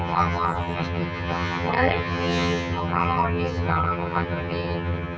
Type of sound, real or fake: fake